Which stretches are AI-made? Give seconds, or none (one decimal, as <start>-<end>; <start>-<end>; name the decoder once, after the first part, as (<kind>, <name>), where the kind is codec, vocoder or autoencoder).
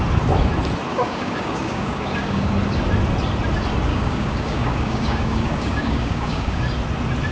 0.9-2.5 (codec, DAC); 3.9-6.6